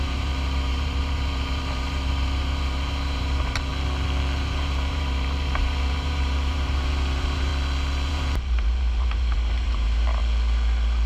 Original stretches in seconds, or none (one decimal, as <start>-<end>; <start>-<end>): 3.7-4.4; 7.5-8.1; 10.2-11.1